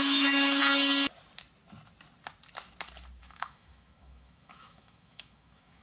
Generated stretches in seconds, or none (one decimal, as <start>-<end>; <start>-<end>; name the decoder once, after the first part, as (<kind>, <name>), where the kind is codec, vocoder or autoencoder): 0.0-0.6 (autoencoder, DAC-VAE); 3.2-5.8